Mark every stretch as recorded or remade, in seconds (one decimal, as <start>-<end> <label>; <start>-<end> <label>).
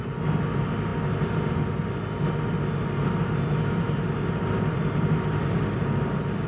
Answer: 0.0-6.5 recorded